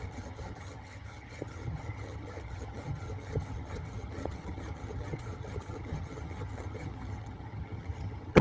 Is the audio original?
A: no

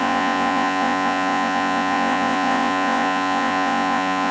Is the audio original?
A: no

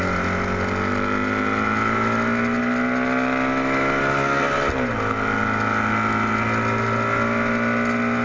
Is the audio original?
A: yes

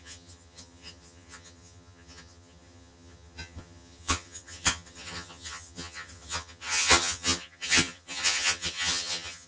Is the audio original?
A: no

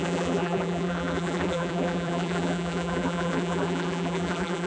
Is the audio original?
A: no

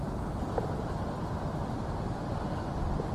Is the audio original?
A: yes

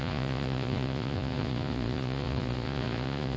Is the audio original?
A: no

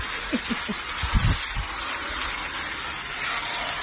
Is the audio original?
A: yes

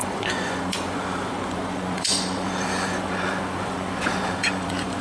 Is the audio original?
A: no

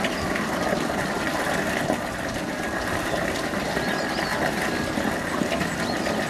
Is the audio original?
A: yes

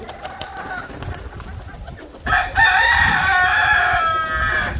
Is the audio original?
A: yes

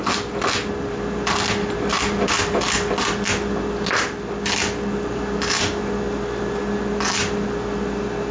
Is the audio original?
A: yes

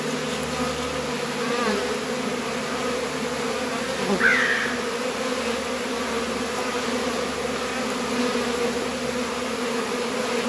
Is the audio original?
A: yes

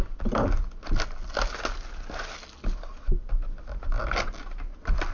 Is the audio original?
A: yes